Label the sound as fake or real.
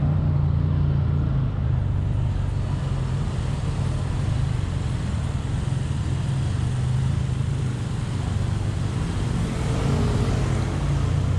real